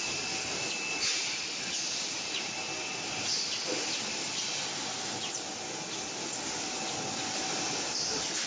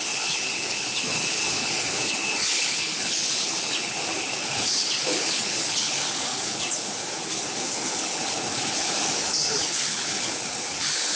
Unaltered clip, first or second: first